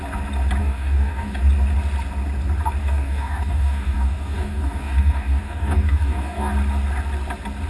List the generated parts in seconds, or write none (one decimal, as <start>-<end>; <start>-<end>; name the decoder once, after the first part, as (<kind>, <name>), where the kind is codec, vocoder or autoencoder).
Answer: 0.6-1.4 (codec, DAC); 2.8-6.5